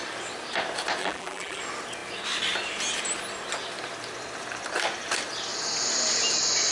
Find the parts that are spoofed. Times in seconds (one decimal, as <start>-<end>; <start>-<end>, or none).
1.0-1.6